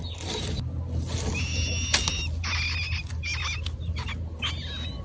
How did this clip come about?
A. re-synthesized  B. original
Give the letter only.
B